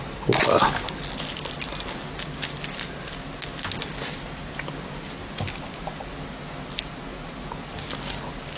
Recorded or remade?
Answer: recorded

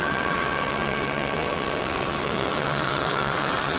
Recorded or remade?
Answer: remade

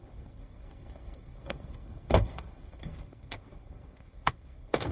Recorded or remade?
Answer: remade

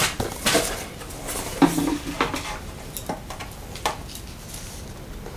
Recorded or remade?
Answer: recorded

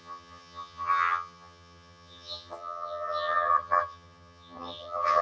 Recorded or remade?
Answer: remade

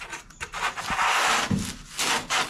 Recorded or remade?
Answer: recorded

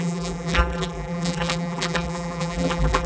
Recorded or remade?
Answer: remade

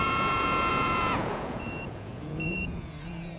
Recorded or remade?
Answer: remade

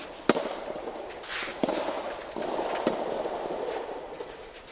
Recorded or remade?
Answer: recorded